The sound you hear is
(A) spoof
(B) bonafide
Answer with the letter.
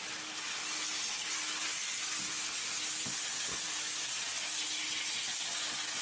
B